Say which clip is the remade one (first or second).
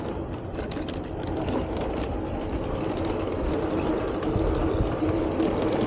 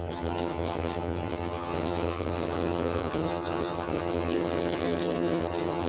second